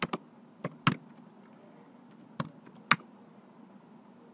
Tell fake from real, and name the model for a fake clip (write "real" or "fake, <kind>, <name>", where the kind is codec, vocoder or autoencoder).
real